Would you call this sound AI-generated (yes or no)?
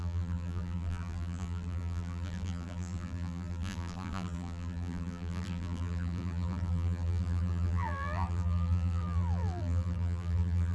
yes